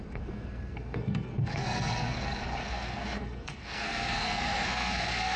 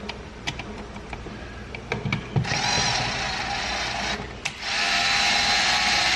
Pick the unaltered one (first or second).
second